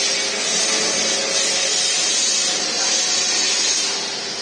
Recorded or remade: recorded